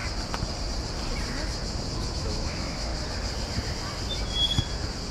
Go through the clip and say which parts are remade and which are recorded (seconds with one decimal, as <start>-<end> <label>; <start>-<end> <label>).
0.0-2.1 recorded; 2.1-2.9 remade; 2.9-5.1 recorded